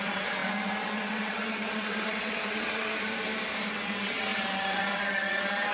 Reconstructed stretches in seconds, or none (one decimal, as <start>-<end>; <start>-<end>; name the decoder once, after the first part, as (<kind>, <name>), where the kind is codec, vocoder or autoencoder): 0.0-2.9 (vocoder, WaveNeXt); 3.7-5.7